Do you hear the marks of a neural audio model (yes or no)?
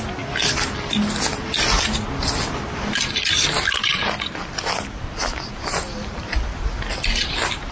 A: no